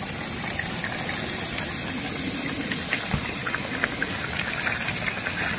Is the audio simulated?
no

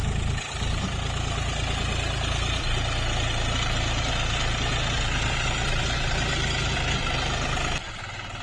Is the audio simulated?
no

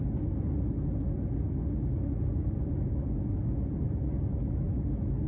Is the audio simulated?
no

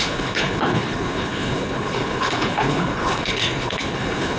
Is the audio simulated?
yes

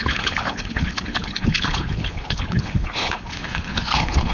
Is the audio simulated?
yes